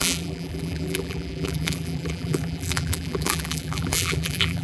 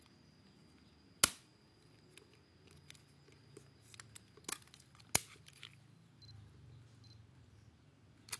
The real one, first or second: second